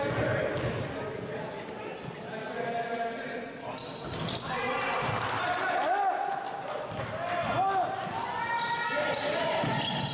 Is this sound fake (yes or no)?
no